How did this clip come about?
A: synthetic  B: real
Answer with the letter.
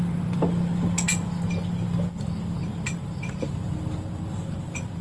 B